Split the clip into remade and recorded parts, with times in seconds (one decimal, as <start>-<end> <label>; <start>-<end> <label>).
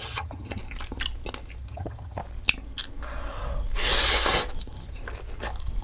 0.0-0.6 remade; 0.6-1.6 recorded; 1.6-2.2 remade; 2.2-5.8 recorded